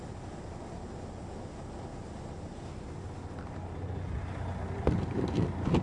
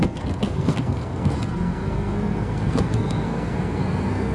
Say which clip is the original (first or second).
first